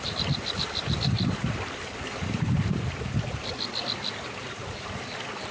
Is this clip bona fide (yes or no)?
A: yes